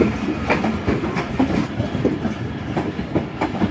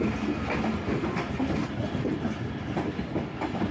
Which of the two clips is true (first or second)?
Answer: second